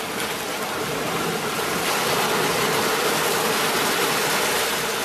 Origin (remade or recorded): recorded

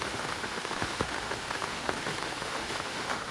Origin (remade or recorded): remade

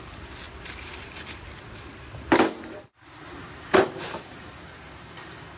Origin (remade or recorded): recorded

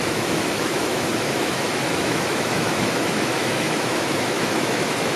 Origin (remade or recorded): remade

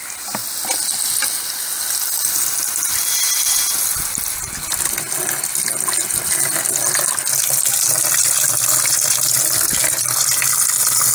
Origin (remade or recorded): recorded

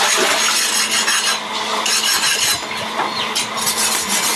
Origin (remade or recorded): recorded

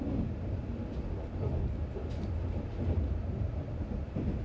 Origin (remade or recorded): recorded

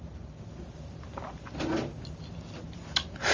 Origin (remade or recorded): recorded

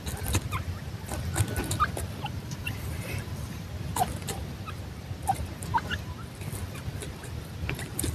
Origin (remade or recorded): recorded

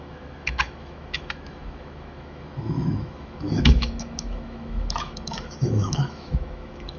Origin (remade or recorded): remade